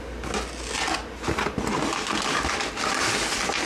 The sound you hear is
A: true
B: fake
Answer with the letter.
A